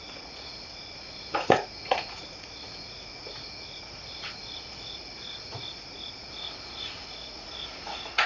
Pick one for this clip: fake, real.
fake